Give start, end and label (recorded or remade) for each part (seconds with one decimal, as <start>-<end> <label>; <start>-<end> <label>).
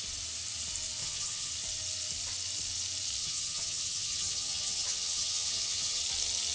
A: 0.0-1.0 recorded; 1.0-1.5 remade; 1.5-3.2 recorded; 3.2-6.0 remade; 6.0-6.5 recorded